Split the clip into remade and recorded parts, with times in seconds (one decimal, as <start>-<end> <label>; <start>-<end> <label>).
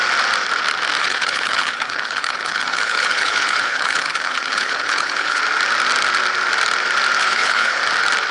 0.0-1.0 recorded; 1.0-5.4 remade; 5.4-7.2 recorded; 7.2-7.8 remade; 7.8-8.3 recorded